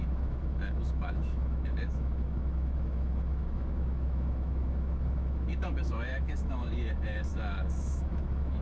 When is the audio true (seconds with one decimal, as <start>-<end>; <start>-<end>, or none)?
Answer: none